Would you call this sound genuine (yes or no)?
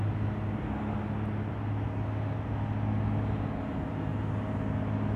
yes